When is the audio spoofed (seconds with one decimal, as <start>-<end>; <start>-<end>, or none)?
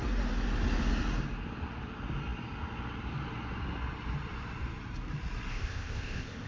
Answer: 5.5-6.5